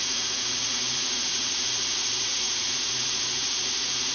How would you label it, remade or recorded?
remade